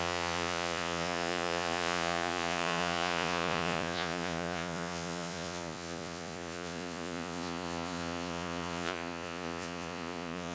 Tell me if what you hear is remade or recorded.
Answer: remade